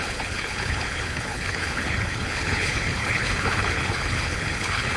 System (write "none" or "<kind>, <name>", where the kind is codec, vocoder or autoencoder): codec, HILCodec